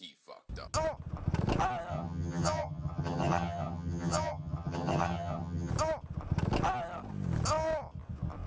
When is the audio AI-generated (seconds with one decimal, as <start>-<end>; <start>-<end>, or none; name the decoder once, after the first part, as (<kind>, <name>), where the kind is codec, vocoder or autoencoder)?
1.9-5.7 (vocoder, HiFi-GAN)